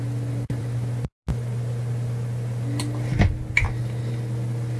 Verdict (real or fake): real